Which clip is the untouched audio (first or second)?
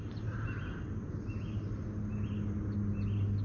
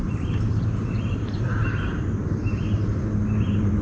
first